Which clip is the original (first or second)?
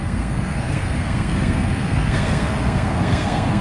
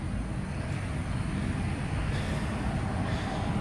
second